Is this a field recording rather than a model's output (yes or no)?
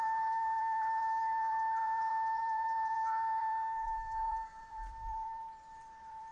no